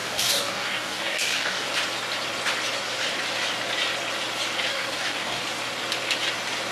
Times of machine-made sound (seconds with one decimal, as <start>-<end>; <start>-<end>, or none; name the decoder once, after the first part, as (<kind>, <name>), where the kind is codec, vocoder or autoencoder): 0.0-1.7 (codec, DAC); 4.7-5.4